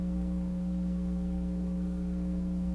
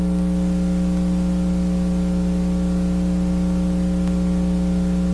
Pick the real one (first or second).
second